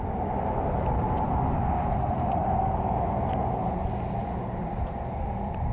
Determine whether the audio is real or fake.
real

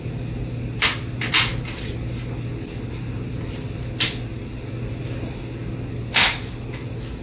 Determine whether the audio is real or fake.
real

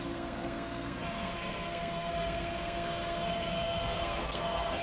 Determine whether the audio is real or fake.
fake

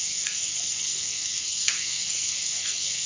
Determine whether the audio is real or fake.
fake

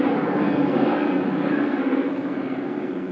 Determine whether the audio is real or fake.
fake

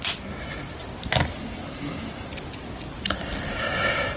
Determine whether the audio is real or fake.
real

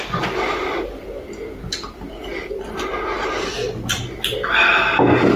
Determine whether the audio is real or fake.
real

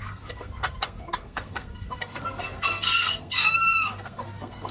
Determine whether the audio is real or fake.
fake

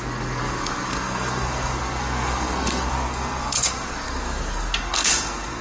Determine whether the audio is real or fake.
fake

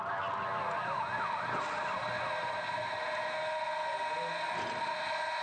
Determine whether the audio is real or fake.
real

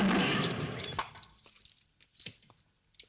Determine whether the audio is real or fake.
real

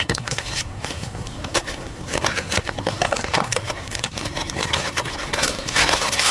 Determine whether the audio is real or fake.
fake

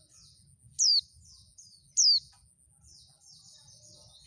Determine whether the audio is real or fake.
real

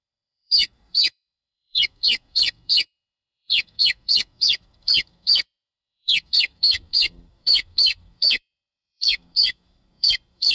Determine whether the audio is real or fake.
fake